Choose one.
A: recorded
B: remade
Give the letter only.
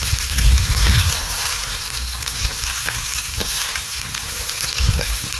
B